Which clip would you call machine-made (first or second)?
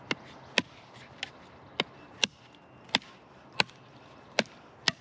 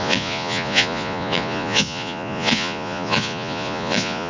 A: second